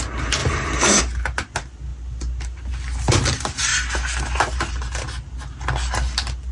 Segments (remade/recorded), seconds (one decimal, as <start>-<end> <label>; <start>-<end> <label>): 0.0-0.4 recorded; 0.4-1.0 remade; 1.0-6.5 recorded